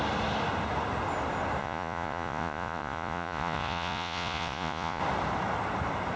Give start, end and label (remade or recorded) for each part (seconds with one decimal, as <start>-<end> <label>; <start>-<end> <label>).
0.0-1.6 recorded; 1.6-5.0 remade; 5.0-6.2 recorded